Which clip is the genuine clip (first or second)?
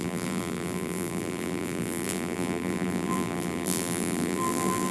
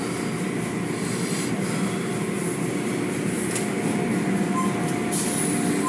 second